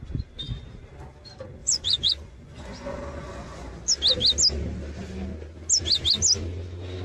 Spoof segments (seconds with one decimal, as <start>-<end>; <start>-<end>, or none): 1.6-3.9